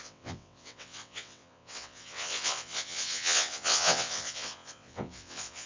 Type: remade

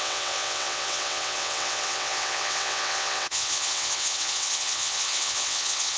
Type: remade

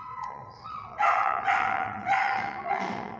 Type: remade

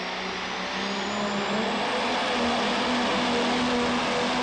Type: recorded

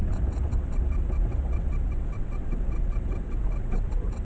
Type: remade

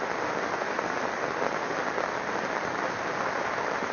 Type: recorded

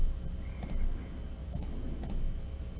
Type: recorded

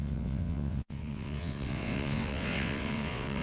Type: remade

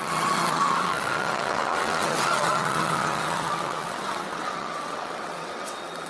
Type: remade